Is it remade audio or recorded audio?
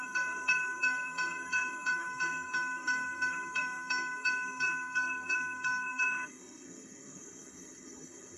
remade